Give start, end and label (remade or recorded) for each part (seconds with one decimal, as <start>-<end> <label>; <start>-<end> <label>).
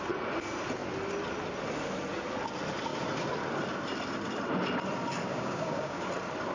0.0-5.3 recorded; 5.3-6.1 remade; 6.1-6.5 recorded